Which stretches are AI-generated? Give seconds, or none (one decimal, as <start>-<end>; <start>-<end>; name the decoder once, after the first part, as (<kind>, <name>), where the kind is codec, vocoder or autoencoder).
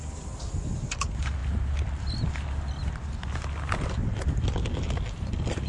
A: none